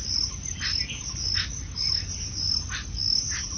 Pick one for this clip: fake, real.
real